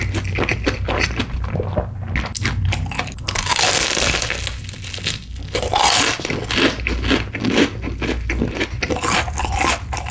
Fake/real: real